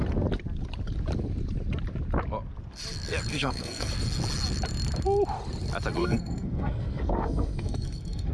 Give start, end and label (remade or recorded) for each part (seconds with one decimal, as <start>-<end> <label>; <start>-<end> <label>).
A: 0.0-3.3 recorded; 3.3-3.9 remade; 3.9-6.0 recorded; 6.0-8.3 remade